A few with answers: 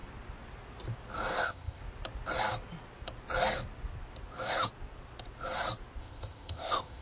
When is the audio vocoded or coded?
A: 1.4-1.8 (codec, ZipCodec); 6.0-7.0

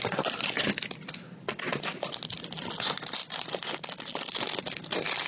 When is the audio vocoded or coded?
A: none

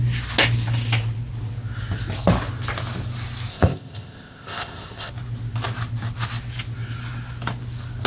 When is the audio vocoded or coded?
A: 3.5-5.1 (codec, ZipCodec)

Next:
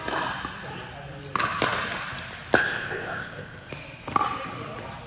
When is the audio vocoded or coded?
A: 2.6-3.7 (codec, ZipCodec)

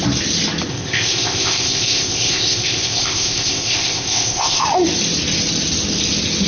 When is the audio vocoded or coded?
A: 0.7-4.6 (codec, ZipCodec)

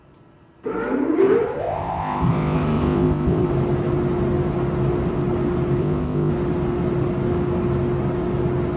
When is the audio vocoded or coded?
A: 1.6-3.5 (codec, ZipCodec); 5.8-6.3

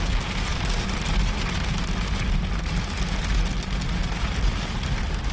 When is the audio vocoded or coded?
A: none